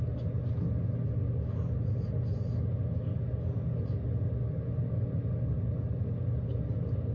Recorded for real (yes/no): yes